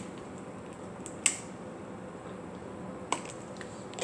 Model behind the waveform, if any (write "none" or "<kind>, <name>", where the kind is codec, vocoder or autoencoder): none